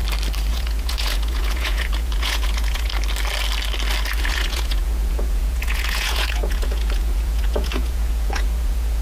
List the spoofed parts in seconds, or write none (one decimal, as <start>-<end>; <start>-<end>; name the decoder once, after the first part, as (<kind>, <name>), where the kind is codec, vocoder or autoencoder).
0.5-2.9 (vocoder, Vocos); 4.2-9.0